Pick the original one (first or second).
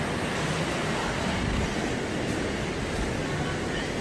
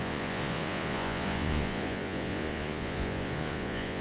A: first